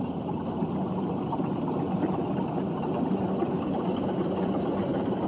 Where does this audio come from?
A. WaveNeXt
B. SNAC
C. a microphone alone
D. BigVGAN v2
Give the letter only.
C